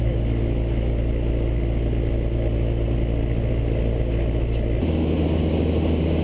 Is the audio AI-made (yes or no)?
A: no